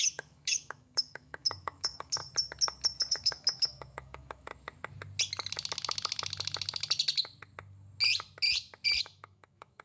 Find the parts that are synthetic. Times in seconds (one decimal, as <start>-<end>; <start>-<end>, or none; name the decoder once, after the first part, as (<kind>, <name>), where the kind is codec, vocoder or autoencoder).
0.0-2.2 (autoencoder, DAC-VAE); 3.1-4.5; 9.0-9.8